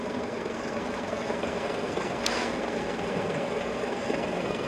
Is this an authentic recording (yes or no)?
no